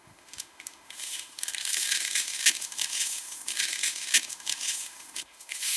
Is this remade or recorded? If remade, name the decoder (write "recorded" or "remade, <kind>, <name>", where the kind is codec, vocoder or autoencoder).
remade, autoencoder, DAC-VAE